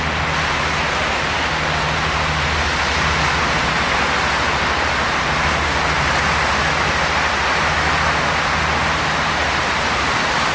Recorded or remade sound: recorded